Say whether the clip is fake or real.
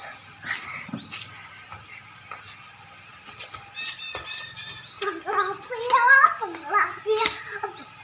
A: real